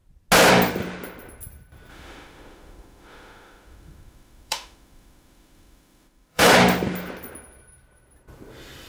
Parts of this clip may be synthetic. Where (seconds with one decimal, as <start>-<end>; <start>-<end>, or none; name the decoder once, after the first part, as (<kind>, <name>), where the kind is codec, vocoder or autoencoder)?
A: 1.9-6.4 (autoencoder, DAC-VAE)